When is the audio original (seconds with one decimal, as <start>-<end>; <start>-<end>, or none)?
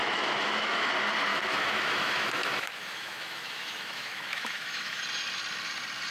0.9-1.3; 5.0-6.1